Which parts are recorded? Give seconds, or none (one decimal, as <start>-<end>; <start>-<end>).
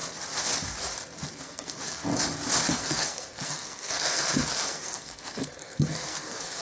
0.0-1.3; 2.1-2.7